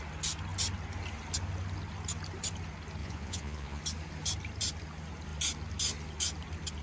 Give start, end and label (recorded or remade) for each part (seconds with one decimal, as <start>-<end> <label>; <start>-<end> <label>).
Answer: 0.0-3.0 recorded; 3.0-3.8 remade; 3.8-6.8 recorded